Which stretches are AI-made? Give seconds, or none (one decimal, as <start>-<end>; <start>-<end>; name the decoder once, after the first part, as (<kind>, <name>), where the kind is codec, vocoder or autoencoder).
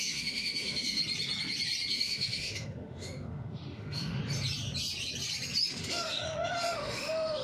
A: 0.0-1.0 (autoencoder, DAC-VAE); 1.9-4.2; 5.7-7.4